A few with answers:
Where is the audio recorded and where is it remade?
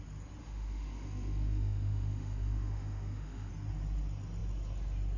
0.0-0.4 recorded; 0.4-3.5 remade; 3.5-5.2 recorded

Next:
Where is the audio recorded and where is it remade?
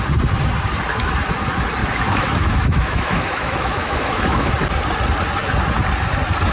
0.0-1.8 recorded; 1.8-4.5 remade; 4.5-6.5 recorded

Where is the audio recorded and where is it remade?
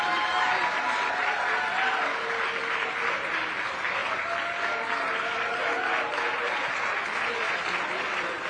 0.0-8.5 recorded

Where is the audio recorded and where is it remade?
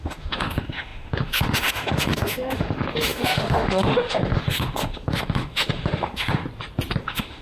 0.0-6.4 remade; 6.4-7.0 recorded; 7.0-7.4 remade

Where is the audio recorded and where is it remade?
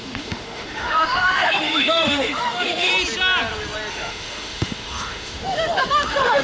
0.0-2.9 remade; 2.9-3.9 recorded; 3.9-6.4 remade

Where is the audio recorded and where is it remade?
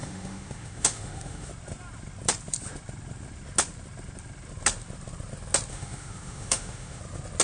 0.0-1.5 remade; 1.5-5.7 recorded; 5.7-7.0 remade; 7.0-7.4 recorded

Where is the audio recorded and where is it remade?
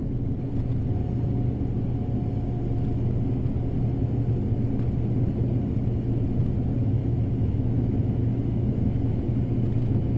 0.0-7.0 recorded; 7.0-9.2 remade; 9.2-10.2 recorded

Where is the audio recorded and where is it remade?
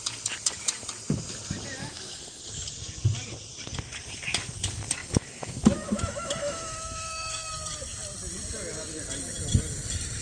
0.0-1.8 recorded; 1.8-2.4 remade; 2.4-5.0 recorded; 5.0-7.5 remade; 7.5-10.2 recorded